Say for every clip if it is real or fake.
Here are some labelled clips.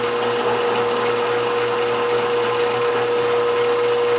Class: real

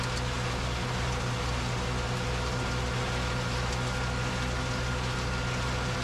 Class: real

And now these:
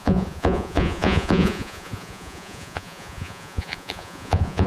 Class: fake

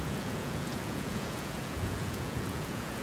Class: fake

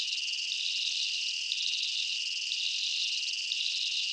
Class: real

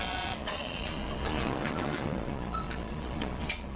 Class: fake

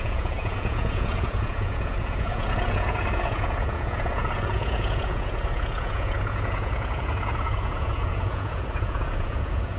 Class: fake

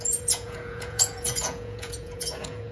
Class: fake